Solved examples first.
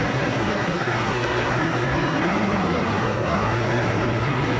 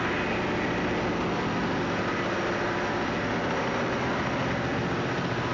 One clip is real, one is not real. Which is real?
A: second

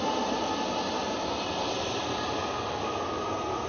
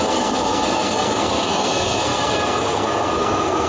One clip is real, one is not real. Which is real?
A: first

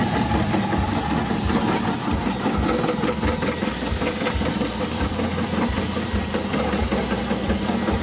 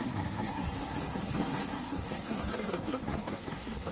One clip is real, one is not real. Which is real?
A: first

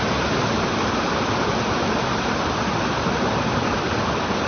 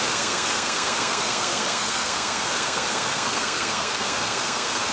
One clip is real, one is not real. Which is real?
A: first